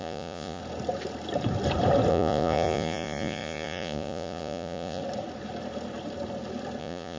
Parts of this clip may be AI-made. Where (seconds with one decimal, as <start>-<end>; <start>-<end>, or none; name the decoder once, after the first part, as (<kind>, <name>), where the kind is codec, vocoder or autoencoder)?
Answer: 0.0-0.6 (vocoder, Vocos); 2.1-5.0; 6.8-7.2